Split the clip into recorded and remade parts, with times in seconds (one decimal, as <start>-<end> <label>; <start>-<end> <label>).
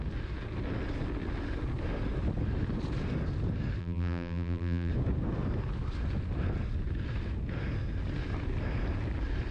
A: 0.0-3.8 recorded; 3.8-4.9 remade; 4.9-9.5 recorded